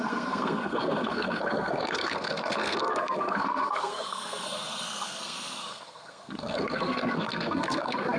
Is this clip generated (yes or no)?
yes